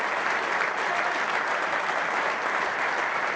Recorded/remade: recorded